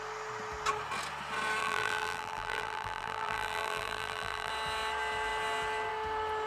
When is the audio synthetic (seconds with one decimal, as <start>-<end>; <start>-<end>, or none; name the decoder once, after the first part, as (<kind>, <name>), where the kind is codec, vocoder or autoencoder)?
1.6-4.5 (vocoder, BigVGAN v2)